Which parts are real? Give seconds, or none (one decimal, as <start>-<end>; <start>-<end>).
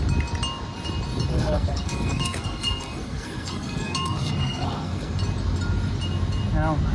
0.0-1.3; 5.2-6.9